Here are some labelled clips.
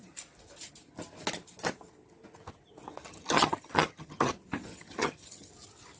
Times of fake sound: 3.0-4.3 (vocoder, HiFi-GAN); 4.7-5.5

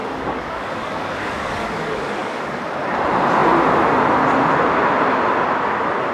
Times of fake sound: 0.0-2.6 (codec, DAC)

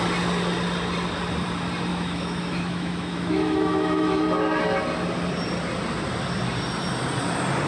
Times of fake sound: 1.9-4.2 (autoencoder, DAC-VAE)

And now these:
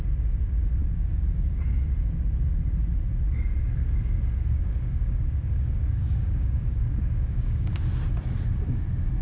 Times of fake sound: 0.8-1.6 (codec, DAC); 3.8-7.8

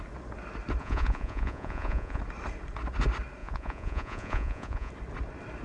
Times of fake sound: 0.8-2.2 (vocoder, Vocos); 3.4-4.9